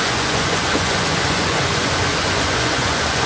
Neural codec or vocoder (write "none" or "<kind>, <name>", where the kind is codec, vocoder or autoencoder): vocoder, Vocos